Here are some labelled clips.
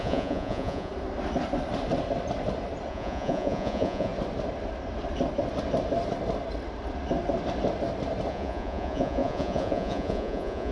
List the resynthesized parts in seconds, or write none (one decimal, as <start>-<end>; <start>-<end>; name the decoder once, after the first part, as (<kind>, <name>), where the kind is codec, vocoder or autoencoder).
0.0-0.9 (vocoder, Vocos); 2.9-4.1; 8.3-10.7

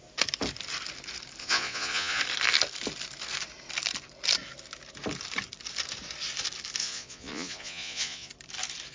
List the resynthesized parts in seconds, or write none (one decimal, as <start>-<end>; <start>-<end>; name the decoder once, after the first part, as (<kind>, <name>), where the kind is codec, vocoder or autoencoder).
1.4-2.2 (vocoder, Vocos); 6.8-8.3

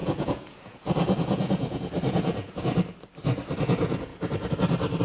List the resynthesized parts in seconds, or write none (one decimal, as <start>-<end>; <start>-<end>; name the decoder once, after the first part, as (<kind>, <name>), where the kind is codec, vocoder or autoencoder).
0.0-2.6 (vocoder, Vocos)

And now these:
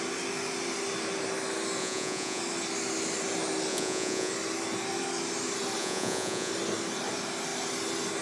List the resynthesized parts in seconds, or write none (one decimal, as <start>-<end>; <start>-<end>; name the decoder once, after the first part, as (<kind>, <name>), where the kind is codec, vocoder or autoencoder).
1.8-2.4 (vocoder, Vocos); 3.7-4.3; 5.8-6.5